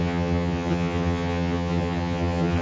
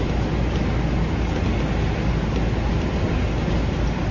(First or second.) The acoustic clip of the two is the second